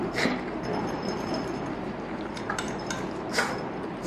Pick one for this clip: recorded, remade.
recorded